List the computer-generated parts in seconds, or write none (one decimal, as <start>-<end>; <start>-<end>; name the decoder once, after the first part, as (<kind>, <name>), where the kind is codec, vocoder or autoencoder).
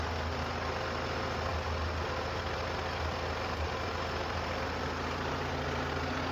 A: none